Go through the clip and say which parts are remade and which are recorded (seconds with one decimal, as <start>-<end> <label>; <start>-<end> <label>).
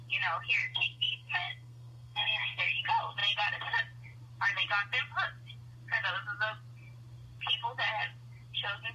0.0-0.6 recorded; 0.6-2.6 remade; 2.6-8.9 recorded